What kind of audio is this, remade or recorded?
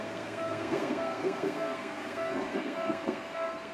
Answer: remade